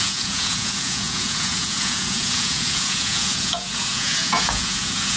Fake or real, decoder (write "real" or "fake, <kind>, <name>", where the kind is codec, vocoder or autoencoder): fake, vocoder, Vocos